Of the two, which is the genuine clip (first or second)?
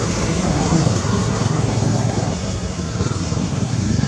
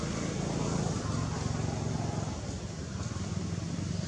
second